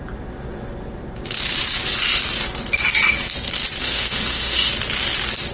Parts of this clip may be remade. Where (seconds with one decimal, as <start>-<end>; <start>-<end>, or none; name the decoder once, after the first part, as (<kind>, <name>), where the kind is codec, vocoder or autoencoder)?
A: 3.8-4.7 (autoencoder, DAC-VAE)